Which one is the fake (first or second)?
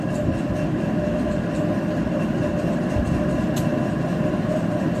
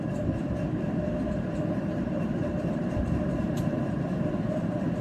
second